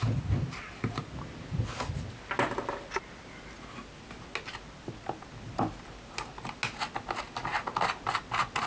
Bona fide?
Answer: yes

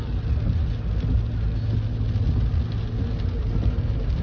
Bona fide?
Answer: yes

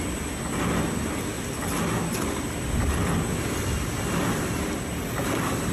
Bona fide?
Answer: yes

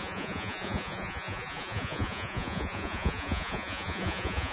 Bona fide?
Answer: no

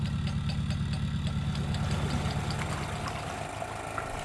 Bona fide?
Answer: yes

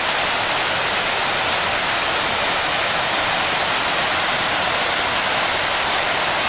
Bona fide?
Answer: yes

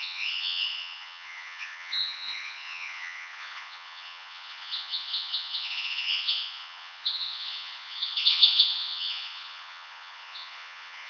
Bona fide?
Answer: no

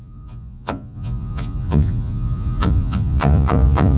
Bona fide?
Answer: no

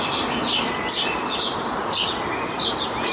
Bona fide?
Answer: yes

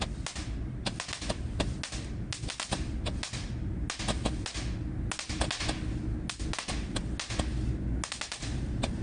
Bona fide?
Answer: yes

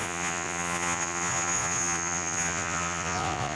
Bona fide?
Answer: no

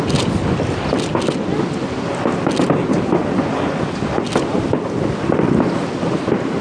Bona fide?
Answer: yes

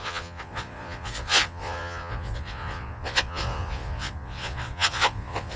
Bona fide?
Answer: no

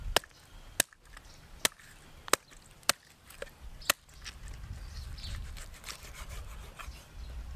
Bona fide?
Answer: yes